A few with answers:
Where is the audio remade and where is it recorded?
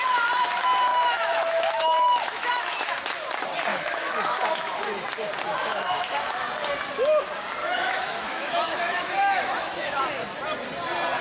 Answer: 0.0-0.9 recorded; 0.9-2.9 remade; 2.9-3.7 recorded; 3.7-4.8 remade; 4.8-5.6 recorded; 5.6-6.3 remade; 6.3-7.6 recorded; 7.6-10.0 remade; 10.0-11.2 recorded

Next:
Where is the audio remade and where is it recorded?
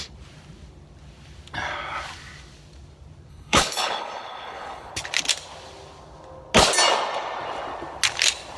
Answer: 0.0-3.3 recorded; 3.3-4.9 remade; 4.9-8.6 recorded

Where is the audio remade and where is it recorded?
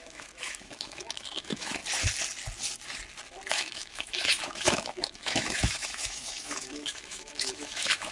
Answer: 0.0-1.8 remade; 1.8-3.5 recorded; 3.5-8.1 remade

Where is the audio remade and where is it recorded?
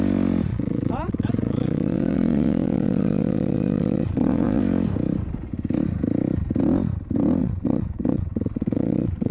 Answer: 0.0-0.5 recorded; 0.5-4.6 remade; 4.6-7.4 recorded; 7.4-9.3 remade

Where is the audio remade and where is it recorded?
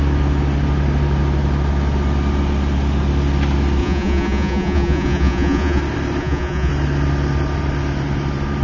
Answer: 0.0-3.8 recorded; 3.8-5.8 remade; 5.8-6.2 recorded; 6.2-6.7 remade; 6.7-8.6 recorded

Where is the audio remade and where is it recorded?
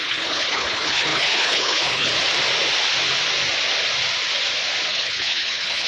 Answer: 0.0-2.1 remade; 2.1-4.9 recorded; 4.9-5.9 remade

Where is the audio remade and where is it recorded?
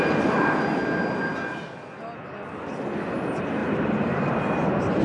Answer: 0.0-3.6 recorded; 3.6-4.2 remade; 4.2-5.0 recorded